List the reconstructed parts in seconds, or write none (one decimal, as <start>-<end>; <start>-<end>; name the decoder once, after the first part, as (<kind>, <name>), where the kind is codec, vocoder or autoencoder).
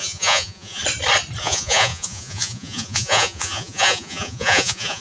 0.0-0.8 (vocoder, Vocos); 1.4-5.0